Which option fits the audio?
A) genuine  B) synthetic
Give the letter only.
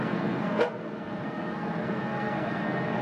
B